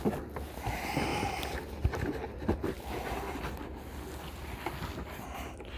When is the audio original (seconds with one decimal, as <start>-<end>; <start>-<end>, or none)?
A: 0.0-5.8